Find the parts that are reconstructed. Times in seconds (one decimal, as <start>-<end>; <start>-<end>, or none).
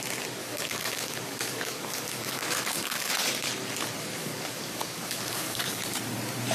0.4-3.1; 4.2-5.8